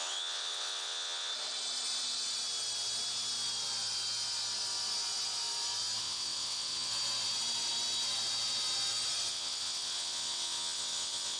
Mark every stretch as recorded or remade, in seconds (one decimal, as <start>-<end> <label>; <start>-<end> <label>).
0.0-1.3 remade; 1.3-6.0 recorded; 6.0-6.9 remade; 6.9-9.3 recorded; 9.3-11.4 remade